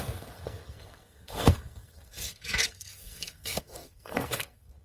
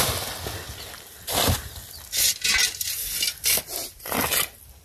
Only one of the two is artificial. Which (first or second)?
first